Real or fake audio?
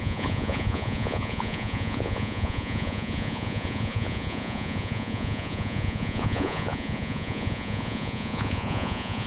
fake